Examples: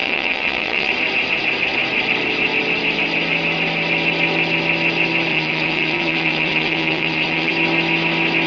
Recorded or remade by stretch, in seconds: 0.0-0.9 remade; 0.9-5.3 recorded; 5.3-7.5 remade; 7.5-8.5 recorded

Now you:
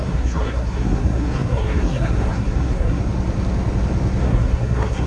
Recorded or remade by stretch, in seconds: 0.0-3.0 remade; 3.0-4.2 recorded; 4.2-5.1 remade

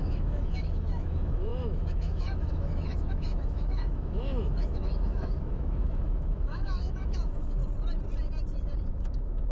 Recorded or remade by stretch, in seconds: 0.0-7.6 remade; 7.6-8.9 recorded; 8.9-9.5 remade

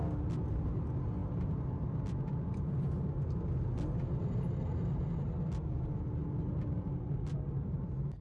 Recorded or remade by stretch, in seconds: 0.0-6.2 recorded; 6.2-8.2 remade

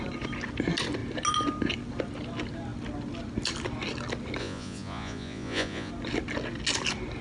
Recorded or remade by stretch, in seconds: 0.0-4.4 recorded; 4.4-5.9 remade; 5.9-7.2 recorded